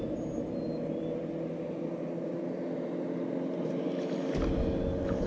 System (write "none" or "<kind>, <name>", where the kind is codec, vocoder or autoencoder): none